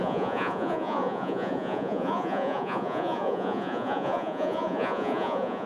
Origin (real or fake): fake